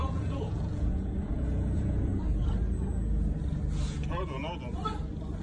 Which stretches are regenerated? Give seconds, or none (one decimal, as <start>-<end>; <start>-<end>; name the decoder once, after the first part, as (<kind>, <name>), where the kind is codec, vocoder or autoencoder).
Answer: 0.0-2.1 (vocoder, Vocos)